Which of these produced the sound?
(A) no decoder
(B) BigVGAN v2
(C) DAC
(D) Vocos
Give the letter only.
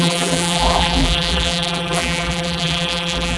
B